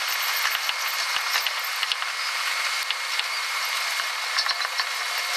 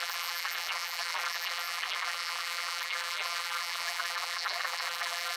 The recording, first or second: first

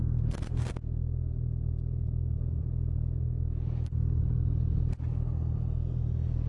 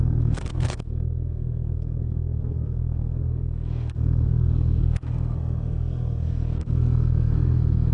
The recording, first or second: first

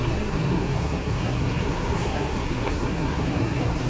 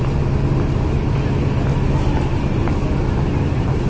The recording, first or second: second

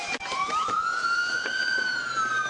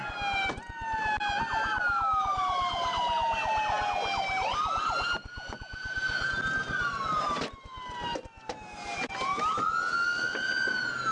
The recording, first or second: second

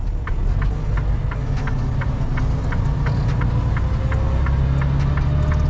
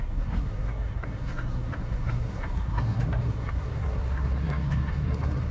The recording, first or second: first